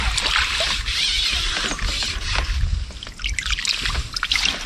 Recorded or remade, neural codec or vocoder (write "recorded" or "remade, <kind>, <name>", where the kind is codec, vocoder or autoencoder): recorded